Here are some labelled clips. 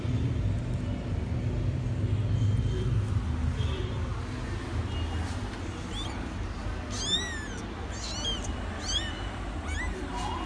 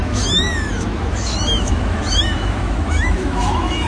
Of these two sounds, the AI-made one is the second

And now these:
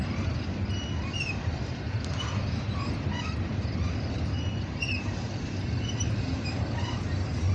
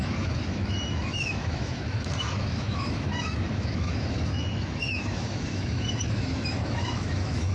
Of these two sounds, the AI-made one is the second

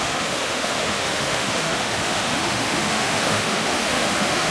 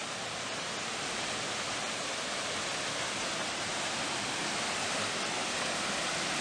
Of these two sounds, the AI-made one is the first